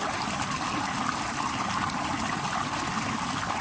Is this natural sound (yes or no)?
yes